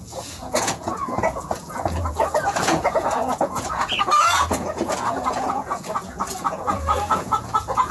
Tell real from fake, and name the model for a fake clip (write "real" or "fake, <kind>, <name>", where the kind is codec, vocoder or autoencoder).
fake, vocoder, Vocos